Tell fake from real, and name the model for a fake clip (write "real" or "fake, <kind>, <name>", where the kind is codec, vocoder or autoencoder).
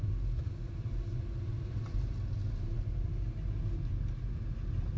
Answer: real